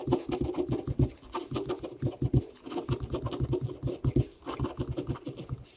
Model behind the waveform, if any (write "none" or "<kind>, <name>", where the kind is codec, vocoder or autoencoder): none